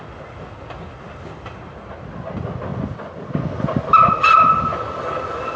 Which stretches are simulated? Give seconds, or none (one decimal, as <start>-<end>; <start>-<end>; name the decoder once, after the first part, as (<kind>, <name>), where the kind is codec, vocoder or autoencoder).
none